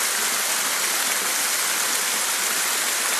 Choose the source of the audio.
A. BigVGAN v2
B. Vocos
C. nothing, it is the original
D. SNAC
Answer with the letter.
C